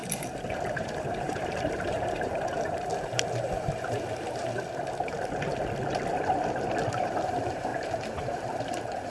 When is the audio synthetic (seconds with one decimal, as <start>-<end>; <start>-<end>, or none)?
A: 0.0-4.4; 6.9-9.1